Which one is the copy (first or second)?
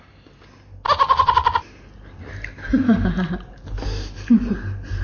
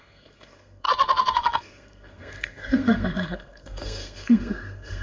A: second